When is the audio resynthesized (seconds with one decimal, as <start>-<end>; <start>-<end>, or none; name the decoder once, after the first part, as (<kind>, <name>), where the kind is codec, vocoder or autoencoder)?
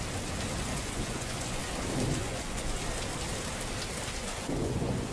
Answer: 0.6-1.6 (vocoder, Vocos); 2.2-2.8; 4.1-5.1